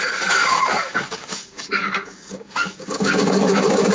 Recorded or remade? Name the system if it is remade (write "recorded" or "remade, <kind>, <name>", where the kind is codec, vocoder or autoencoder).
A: remade, codec, DAC